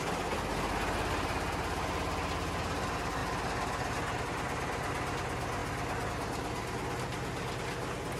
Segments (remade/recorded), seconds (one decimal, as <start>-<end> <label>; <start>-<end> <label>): 0.0-8.2 recorded